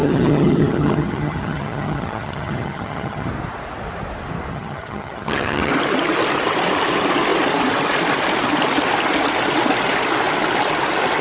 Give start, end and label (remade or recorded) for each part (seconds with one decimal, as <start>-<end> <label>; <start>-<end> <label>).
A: 0.0-3.3 remade; 3.3-4.5 recorded; 4.5-5.7 remade; 5.7-11.2 recorded